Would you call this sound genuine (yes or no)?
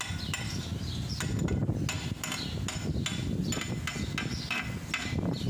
yes